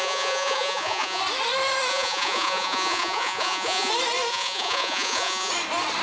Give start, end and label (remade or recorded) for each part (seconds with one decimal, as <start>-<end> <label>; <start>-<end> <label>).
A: 0.0-1.2 remade; 1.2-1.9 recorded; 1.9-3.9 remade; 3.9-4.3 recorded; 4.3-5.5 remade; 5.5-6.0 recorded